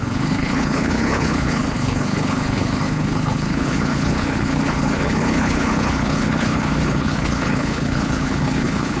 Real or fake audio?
fake